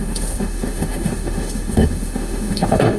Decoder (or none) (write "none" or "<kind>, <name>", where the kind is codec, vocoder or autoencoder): autoencoder, DAC-VAE